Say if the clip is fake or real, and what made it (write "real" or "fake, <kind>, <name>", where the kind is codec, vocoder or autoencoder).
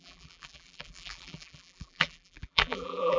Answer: fake, vocoder, BigVGAN v2